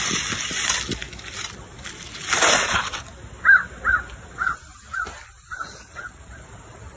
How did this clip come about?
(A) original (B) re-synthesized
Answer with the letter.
A